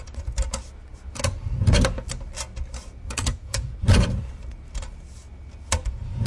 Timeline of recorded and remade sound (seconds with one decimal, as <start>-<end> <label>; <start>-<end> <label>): 0.0-3.3 recorded; 3.3-3.8 remade; 3.8-6.3 recorded